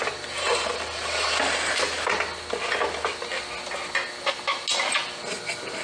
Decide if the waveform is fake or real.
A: real